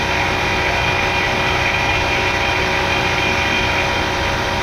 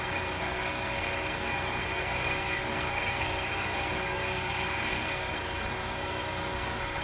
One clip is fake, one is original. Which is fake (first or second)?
second